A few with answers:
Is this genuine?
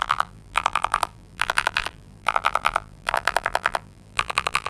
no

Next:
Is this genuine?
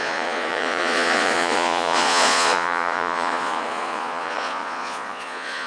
no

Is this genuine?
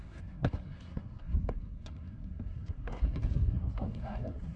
no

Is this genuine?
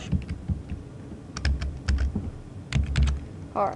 yes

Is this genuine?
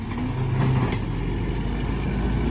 yes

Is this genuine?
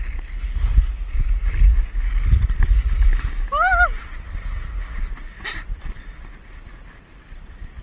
yes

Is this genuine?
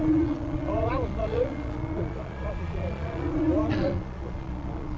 no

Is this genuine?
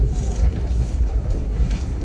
no